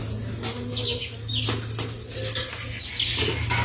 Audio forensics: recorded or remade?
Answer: recorded